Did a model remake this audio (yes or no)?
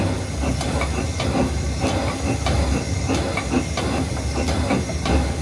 no